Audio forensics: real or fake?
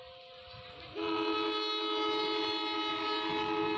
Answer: real